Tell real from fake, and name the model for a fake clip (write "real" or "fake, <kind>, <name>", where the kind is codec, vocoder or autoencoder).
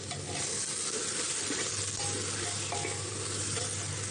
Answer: real